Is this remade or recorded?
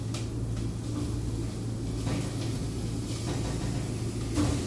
recorded